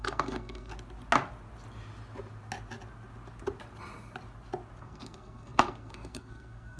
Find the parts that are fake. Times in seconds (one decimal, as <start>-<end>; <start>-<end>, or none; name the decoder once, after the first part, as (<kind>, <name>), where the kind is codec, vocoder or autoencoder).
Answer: 0.0-0.7 (codec, SNAC); 4.8-6.8